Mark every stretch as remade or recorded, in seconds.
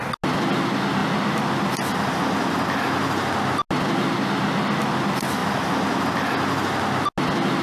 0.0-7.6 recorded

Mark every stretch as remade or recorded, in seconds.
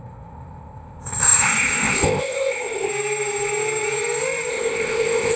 0.0-2.9 remade; 2.9-4.5 recorded; 4.5-5.4 remade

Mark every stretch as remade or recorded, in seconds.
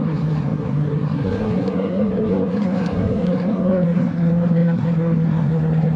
0.0-6.0 remade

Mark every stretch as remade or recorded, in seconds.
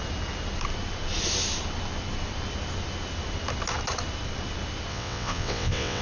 0.0-4.9 recorded; 4.9-6.0 remade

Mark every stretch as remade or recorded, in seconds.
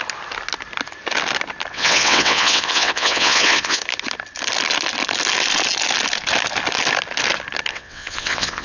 0.0-1.7 recorded; 1.7-3.8 remade; 3.8-7.7 recorded; 7.7-8.6 remade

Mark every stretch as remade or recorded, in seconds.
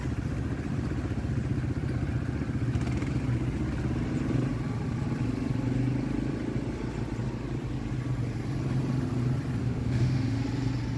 0.0-9.6 recorded; 9.6-10.4 remade; 10.4-11.0 recorded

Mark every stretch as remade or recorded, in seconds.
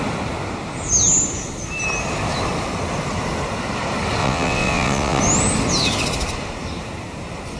0.0-4.2 recorded; 4.2-5.2 remade; 5.2-7.6 recorded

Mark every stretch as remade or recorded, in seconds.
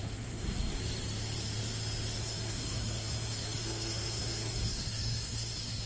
0.0-0.8 remade; 0.8-2.2 recorded; 2.2-5.9 remade